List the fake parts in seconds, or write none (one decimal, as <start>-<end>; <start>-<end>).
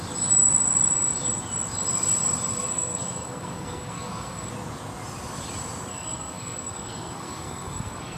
2.5-4.5; 5.9-8.2